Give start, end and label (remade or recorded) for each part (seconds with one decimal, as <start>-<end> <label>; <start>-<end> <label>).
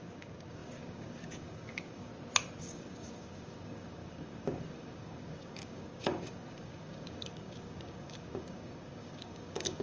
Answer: 0.0-2.1 remade; 2.1-2.6 recorded; 2.6-9.8 remade